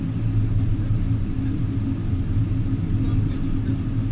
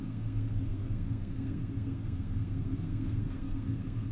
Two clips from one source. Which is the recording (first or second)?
first